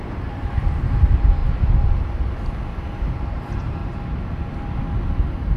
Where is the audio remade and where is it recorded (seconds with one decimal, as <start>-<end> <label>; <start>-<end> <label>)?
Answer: 0.0-1.4 remade; 1.4-3.2 recorded; 3.2-3.8 remade; 3.8-5.6 recorded